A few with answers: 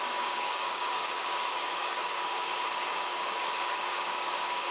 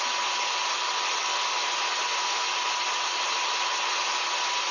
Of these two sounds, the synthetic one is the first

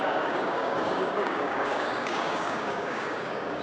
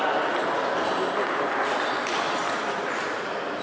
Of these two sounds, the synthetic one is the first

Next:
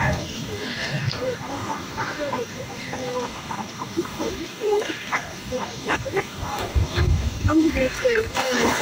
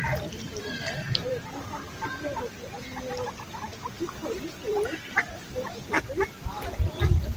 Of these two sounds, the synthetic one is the first